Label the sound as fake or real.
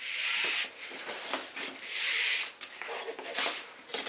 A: real